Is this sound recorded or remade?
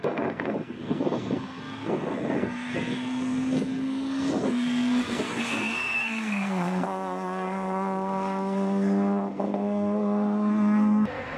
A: remade